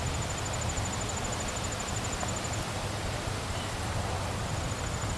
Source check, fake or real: real